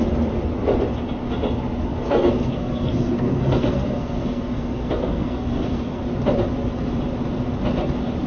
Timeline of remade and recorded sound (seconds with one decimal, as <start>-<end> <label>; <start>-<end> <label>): 0.0-1.9 recorded; 1.9-6.0 remade; 6.0-8.3 recorded